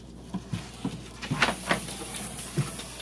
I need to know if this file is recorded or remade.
recorded